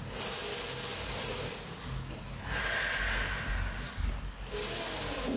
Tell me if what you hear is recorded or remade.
recorded